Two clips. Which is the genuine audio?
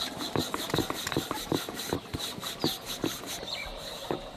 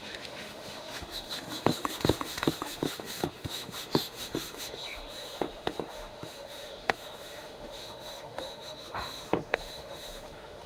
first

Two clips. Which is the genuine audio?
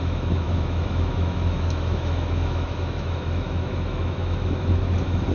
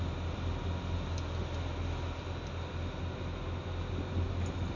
second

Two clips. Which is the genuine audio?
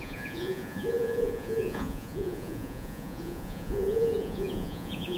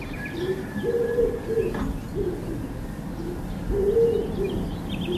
second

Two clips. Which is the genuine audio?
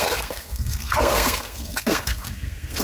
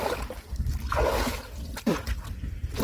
second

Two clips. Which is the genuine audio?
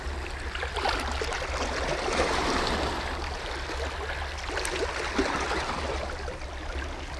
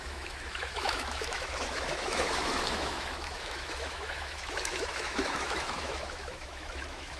first